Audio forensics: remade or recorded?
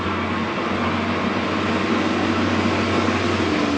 recorded